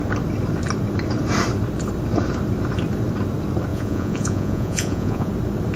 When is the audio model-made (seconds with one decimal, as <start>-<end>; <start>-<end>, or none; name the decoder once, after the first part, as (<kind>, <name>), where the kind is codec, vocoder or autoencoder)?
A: 3.7-5.3 (vocoder, Vocos)